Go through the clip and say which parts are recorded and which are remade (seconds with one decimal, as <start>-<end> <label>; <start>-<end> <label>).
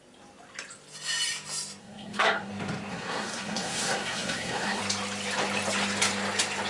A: 0.0-1.8 recorded; 1.8-2.5 remade; 2.5-2.9 recorded; 2.9-4.8 remade; 4.8-6.7 recorded